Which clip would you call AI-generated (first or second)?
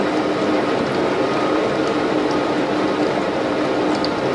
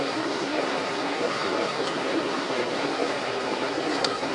second